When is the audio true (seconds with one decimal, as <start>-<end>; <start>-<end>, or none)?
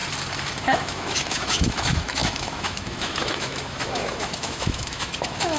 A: 0.0-0.6